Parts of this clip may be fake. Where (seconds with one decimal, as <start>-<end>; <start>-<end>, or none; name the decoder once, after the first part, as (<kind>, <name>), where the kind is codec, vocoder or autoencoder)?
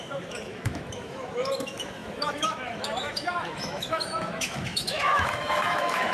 0.0-6.1 (autoencoder, DAC-VAE)